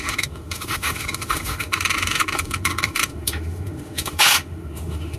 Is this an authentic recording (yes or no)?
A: no